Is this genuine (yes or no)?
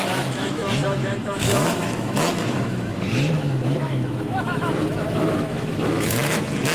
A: no